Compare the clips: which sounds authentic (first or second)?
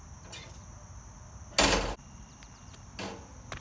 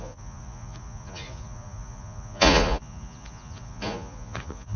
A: first